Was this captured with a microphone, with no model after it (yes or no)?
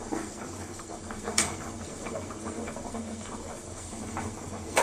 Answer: no